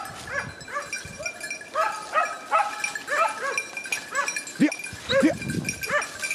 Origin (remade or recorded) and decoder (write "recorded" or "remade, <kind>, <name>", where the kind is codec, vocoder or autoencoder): recorded